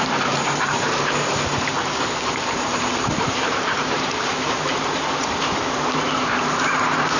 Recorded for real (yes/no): no